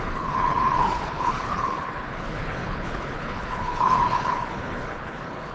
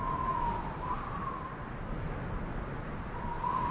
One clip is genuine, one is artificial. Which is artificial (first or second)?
first